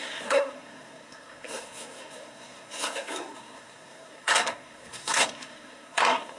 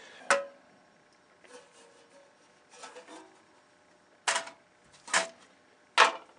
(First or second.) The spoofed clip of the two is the first